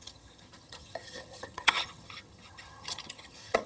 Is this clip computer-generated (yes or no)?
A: yes